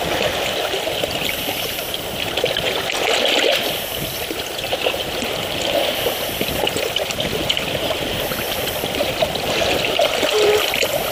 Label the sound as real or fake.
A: fake